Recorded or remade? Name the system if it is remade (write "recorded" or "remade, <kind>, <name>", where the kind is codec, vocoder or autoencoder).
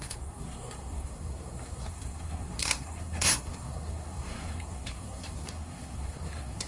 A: remade, codec, SNAC